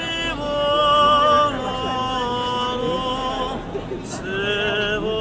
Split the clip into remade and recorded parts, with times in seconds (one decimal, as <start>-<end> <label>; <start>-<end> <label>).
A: 0.0-5.2 recorded